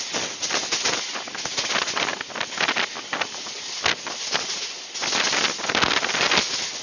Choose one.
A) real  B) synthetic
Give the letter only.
A